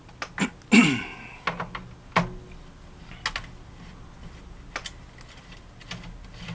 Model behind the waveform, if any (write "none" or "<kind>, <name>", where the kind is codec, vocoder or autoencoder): none